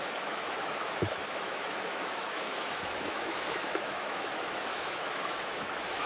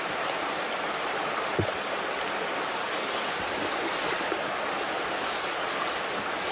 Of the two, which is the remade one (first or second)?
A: first